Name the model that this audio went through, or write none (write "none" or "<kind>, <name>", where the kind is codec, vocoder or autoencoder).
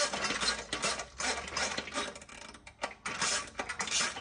none